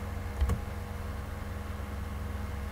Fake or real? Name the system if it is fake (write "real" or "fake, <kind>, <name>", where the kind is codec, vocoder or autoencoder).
real